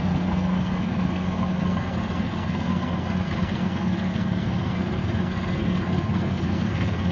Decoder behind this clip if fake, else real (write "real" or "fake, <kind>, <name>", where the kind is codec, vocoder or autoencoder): fake, codec, SNAC